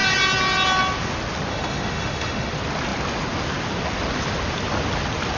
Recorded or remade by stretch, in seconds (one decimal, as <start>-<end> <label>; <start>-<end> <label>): 0.0-1.5 recorded; 1.5-2.5 remade; 2.5-5.4 recorded